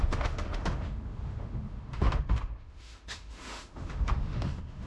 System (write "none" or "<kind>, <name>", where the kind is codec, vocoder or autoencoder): autoencoder, DAC-VAE